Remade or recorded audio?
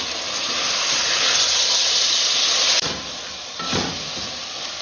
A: recorded